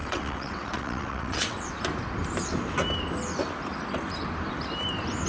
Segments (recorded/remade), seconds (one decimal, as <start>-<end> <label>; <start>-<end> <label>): 0.0-1.7 remade; 1.7-5.3 recorded